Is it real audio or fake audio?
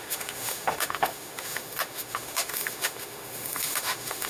fake